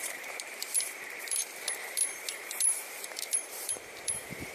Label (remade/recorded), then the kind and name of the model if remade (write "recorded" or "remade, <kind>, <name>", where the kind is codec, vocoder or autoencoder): remade, vocoder, BigVGAN v2